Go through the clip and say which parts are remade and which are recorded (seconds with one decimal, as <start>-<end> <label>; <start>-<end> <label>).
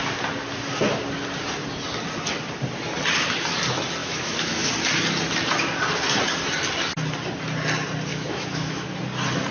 0.0-4.0 recorded; 4.0-4.7 remade; 4.7-8.1 recorded; 8.1-9.0 remade; 9.0-9.5 recorded